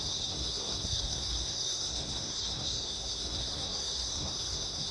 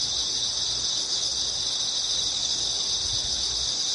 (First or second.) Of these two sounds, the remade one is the first